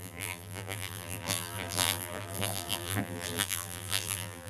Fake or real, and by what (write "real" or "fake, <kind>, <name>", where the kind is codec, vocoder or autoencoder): fake, vocoder, BigVGAN v2